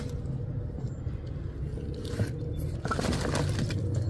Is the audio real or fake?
real